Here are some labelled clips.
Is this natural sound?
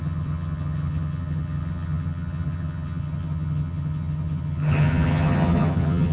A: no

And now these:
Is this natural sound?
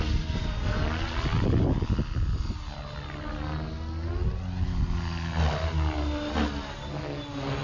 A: yes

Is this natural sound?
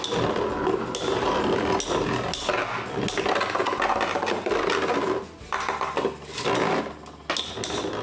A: yes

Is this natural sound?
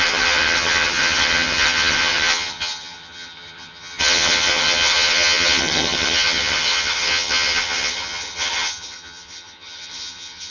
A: no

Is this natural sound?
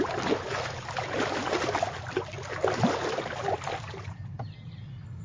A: yes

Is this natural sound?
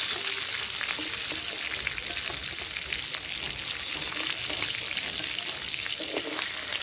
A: yes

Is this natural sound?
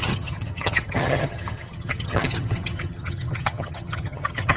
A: no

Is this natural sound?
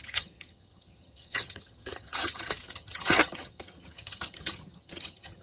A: no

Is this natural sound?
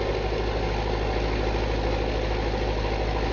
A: yes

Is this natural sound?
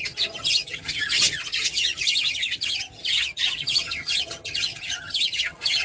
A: no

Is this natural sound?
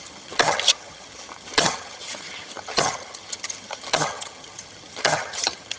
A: no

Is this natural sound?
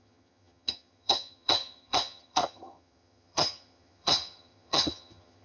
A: no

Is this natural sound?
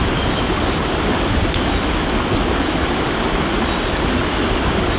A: yes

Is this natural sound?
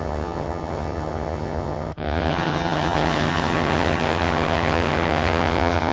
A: no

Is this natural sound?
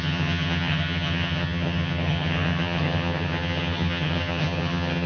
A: no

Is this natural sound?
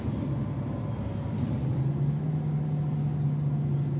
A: yes